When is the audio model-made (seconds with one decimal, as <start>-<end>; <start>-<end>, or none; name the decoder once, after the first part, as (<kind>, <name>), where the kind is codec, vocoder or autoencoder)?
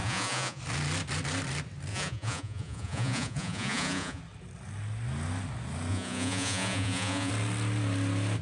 0.0-0.6 (vocoder, Vocos); 1.9-4.2; 5.9-7.3